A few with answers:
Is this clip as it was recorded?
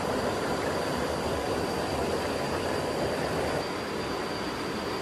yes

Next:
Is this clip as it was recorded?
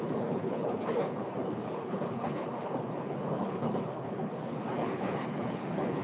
no